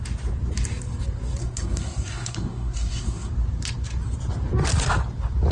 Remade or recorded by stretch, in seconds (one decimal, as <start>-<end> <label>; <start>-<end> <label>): 0.0-1.4 recorded; 1.4-3.3 remade; 3.3-5.5 recorded